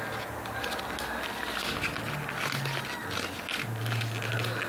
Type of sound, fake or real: real